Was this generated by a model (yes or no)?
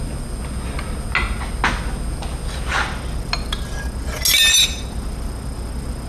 no